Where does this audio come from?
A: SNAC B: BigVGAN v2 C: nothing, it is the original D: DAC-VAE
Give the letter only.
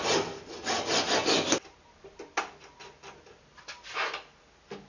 C